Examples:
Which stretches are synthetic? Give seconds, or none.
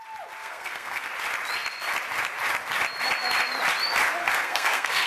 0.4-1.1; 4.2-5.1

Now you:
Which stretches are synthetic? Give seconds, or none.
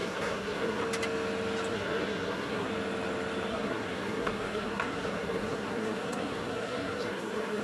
0.0-0.8; 1.7-2.7; 3.5-7.6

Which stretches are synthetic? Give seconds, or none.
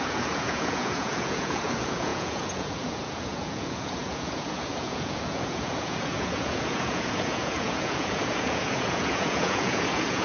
0.0-10.2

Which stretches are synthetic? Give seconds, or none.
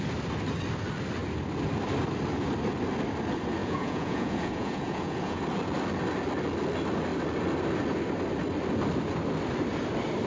3.6-5.4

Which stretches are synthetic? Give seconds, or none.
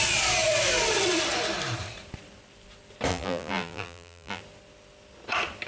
3.1-4.4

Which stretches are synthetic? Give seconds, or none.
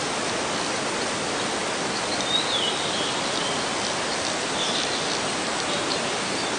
1.6-3.7